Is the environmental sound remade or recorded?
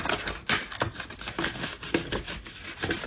recorded